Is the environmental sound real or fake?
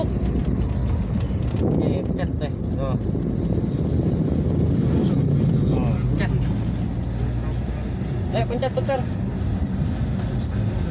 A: real